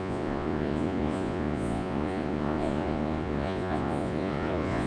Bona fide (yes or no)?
no